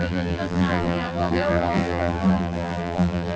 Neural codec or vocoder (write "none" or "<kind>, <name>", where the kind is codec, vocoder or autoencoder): vocoder, BigVGAN v2